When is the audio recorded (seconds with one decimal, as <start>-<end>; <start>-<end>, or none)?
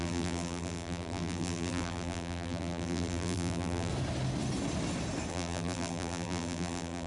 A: 3.9-5.3